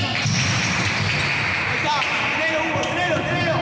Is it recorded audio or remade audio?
recorded